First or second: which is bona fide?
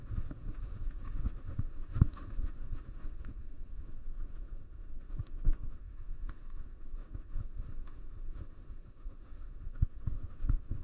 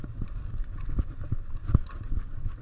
second